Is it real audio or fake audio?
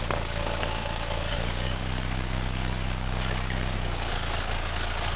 fake